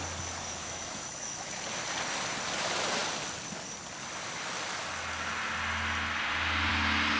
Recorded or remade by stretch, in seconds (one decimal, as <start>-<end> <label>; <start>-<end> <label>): 0.0-0.6 recorded; 0.6-1.5 remade; 1.5-7.2 recorded